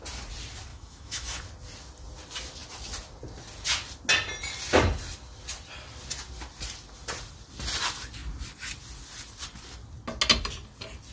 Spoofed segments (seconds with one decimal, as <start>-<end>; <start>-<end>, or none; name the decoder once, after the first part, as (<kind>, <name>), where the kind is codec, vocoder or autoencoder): 0.7-1.4 (autoencoder, DAC-VAE)